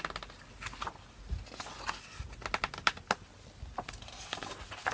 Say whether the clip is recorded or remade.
recorded